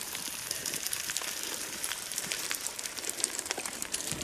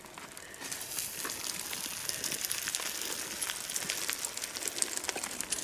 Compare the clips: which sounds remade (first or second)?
first